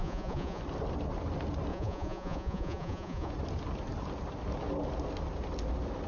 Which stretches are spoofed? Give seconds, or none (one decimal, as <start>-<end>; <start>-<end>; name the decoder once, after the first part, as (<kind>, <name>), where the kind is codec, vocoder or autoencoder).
0.0-0.6 (vocoder, Vocos); 1.7-3.3